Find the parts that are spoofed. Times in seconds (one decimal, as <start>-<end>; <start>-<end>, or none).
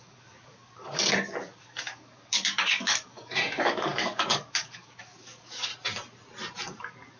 0.0-5.7; 6.8-7.2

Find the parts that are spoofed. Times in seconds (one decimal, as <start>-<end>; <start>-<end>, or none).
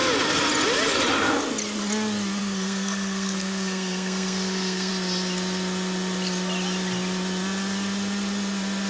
2.4-4.9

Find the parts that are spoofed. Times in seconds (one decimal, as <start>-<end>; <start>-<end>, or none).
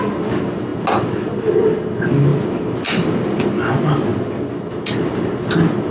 none